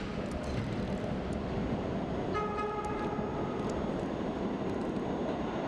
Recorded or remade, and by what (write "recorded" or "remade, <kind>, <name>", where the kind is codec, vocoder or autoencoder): recorded